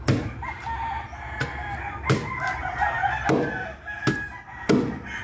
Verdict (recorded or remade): recorded